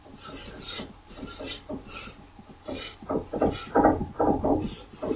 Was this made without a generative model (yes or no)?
yes